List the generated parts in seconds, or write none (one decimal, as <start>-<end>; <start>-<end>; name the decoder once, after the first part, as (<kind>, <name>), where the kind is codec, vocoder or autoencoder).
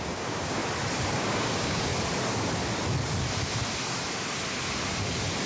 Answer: 0.0-0.6 (codec, DAC); 1.1-1.9